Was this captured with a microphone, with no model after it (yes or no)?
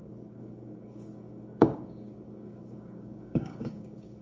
no